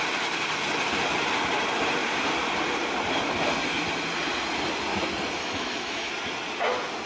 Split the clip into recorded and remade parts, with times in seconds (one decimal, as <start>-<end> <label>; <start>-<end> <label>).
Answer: 0.0-5.4 recorded; 5.4-6.1 remade; 6.1-7.1 recorded